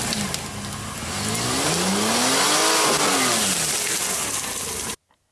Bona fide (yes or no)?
yes